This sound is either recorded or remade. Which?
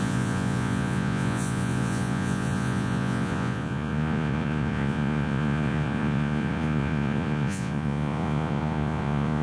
remade